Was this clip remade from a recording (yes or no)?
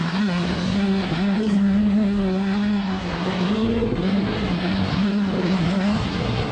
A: yes